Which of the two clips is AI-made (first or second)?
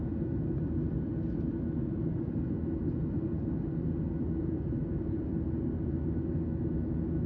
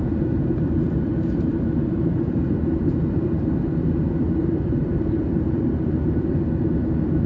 second